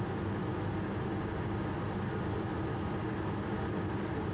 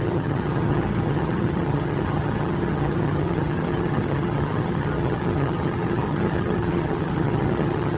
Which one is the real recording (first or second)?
first